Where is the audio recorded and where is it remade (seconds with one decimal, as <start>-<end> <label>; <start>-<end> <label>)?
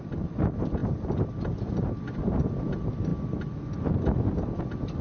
0.0-5.0 recorded